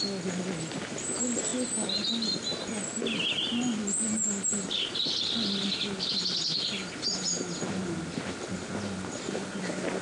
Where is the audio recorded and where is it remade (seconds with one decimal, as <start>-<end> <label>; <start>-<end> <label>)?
0.0-10.0 recorded